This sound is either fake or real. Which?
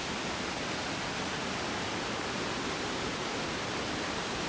fake